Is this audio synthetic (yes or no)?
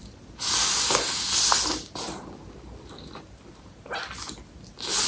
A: no